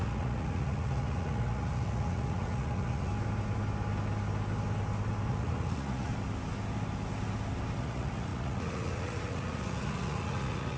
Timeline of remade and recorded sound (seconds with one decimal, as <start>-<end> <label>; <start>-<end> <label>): 0.0-3.1 remade; 3.1-5.3 recorded; 5.3-6.1 remade; 6.1-7.8 recorded; 7.8-10.8 remade

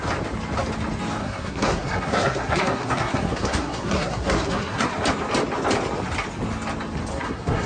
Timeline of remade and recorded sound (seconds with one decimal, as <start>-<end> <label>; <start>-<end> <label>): 0.0-1.2 recorded; 1.2-4.9 remade; 4.9-7.1 recorded; 7.1-7.7 remade

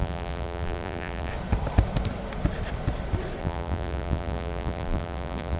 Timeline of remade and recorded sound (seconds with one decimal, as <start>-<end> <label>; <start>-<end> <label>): 0.0-1.3 remade; 1.3-3.4 recorded; 3.4-5.6 remade